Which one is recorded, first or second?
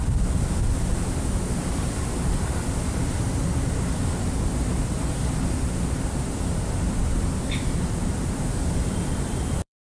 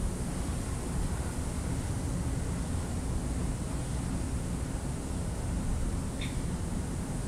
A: second